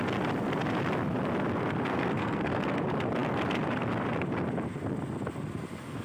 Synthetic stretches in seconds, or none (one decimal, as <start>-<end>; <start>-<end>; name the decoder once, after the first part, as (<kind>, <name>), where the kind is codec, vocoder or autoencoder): 1.9-2.6 (codec, SNAC)